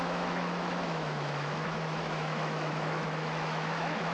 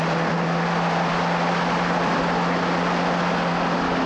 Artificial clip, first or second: first